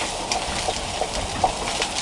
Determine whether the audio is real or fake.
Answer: real